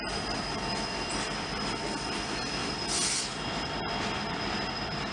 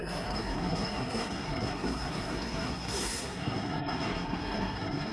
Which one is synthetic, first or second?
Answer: second